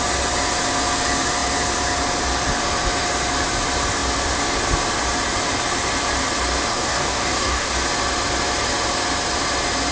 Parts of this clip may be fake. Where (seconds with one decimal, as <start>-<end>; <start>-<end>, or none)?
6.7-7.7